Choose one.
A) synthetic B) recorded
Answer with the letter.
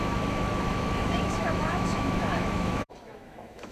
A